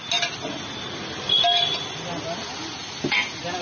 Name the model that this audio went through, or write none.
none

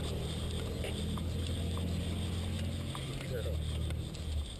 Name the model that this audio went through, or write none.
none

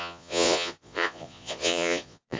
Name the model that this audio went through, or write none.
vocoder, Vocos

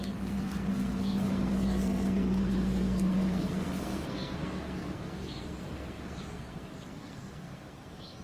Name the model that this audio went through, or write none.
codec, SNAC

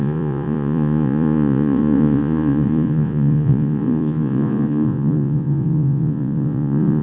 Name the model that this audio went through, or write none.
vocoder, Vocos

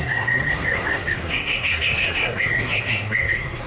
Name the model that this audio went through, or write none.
codec, SNAC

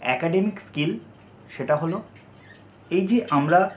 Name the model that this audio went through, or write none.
none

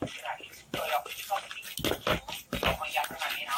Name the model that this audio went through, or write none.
none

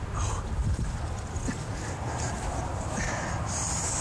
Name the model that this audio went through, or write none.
none